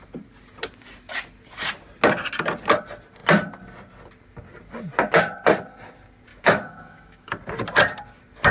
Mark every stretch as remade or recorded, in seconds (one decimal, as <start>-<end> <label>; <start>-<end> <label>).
0.0-6.3 recorded; 6.3-7.3 remade; 7.3-8.5 recorded